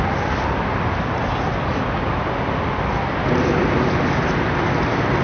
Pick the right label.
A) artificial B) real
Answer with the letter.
B